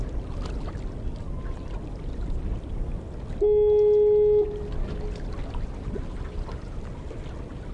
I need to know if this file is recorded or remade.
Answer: recorded